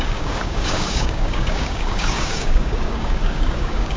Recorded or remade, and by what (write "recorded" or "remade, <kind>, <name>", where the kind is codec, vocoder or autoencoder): remade, codec, DAC